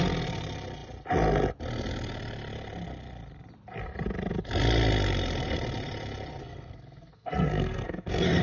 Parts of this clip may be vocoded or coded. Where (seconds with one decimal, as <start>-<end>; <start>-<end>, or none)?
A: 6.4-8.4

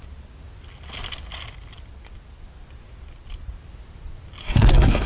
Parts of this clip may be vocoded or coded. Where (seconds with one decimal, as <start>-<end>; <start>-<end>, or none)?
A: 4.4-5.1

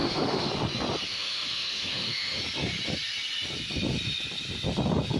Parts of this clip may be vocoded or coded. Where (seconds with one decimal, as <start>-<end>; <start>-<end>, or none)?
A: 0.0-0.5; 1.1-2.4